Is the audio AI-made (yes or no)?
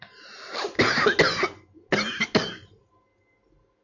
no